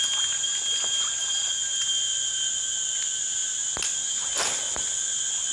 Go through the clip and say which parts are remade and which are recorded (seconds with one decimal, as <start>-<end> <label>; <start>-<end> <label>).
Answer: 0.0-5.5 recorded